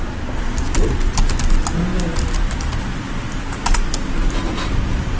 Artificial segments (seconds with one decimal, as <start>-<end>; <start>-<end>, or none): none